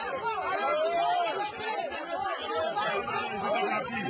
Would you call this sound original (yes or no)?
yes